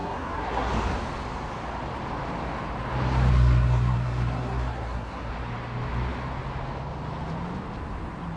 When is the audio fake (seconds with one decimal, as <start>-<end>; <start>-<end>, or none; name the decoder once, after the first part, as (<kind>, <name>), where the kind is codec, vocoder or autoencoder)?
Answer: 0.0-0.7 (codec, SNAC); 3.3-5.3